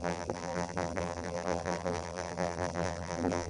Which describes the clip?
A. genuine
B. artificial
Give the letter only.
B